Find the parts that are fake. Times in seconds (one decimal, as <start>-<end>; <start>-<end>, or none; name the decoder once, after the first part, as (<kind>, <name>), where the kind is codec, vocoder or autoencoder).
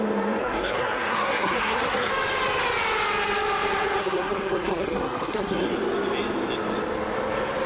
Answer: 0.4-2.1 (codec, SNAC); 4.0-5.7